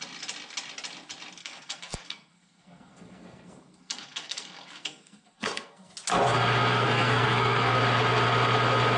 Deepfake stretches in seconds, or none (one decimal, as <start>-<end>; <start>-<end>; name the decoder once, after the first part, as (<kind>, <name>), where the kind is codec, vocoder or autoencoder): 1.4-5.9 (codec, SNAC); 6.7-7.8